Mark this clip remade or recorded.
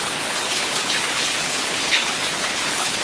remade